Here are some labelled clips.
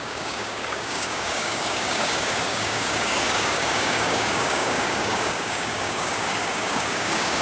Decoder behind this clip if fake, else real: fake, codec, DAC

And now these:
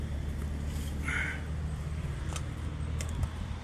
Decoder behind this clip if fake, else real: real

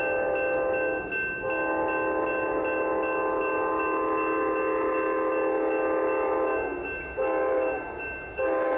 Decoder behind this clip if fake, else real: real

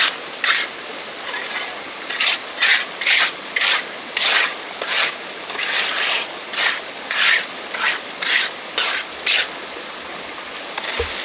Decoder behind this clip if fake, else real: real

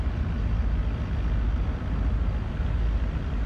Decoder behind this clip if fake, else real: real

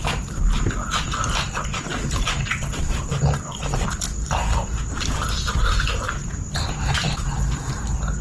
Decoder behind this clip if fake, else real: real